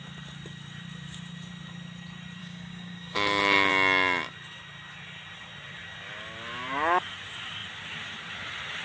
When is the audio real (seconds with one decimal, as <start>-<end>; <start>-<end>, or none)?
0.0-2.4; 3.7-8.8